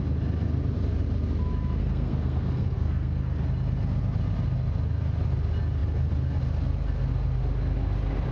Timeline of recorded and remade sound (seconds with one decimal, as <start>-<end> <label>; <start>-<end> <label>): 0.0-1.8 recorded; 1.8-3.4 remade; 3.4-8.3 recorded

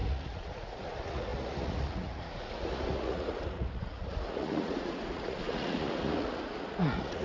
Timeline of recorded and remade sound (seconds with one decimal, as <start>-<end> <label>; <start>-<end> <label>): 0.0-7.2 remade

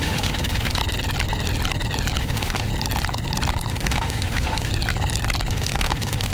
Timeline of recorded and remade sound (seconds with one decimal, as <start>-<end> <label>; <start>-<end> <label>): 0.0-0.8 remade; 0.8-2.2 recorded; 2.2-2.7 remade; 2.7-3.7 recorded; 3.7-4.7 remade; 4.7-5.5 recorded; 5.5-6.3 remade

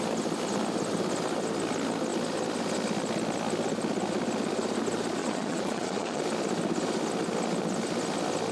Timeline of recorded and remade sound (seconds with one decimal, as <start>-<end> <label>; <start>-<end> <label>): 0.0-5.2 recorded; 5.2-6.2 remade; 6.2-8.5 recorded

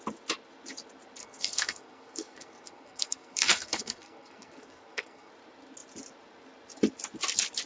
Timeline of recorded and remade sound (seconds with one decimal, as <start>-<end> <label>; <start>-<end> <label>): 0.0-1.2 recorded; 1.2-5.3 remade; 5.3-7.7 recorded

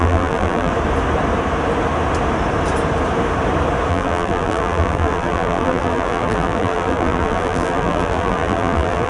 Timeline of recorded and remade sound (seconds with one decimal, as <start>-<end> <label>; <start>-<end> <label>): 0.0-0.7 remade; 0.7-3.9 recorded; 3.9-9.1 remade